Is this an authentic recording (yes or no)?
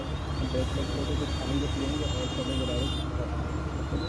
yes